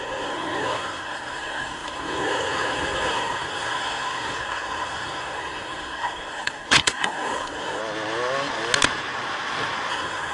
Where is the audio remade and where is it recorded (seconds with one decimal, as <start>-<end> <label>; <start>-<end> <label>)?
0.0-7.8 remade; 7.8-9.9 recorded; 9.9-10.3 remade